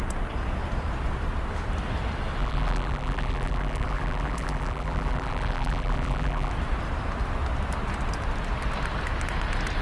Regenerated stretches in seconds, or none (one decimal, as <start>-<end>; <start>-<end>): 2.4-6.5